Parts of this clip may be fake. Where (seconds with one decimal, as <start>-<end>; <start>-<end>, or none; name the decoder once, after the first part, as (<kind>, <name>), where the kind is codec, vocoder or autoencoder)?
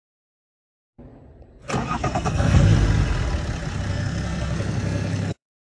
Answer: 0.0-0.5 (codec, SNAC); 1.9-2.7; 3.9-5.7